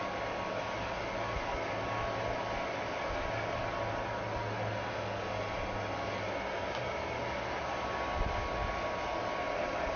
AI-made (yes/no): no